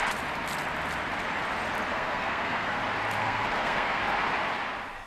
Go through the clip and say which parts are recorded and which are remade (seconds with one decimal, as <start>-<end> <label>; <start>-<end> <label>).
0.0-1.9 recorded; 1.9-2.8 remade; 2.8-3.2 recorded; 3.2-4.0 remade; 4.0-5.1 recorded